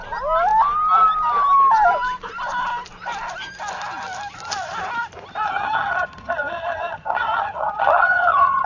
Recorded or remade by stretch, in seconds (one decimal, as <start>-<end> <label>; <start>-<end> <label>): 0.0-5.4 recorded; 5.4-8.7 remade